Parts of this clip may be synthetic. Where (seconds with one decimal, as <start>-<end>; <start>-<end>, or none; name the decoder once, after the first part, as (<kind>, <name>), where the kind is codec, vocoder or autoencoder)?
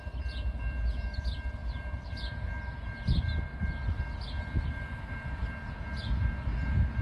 none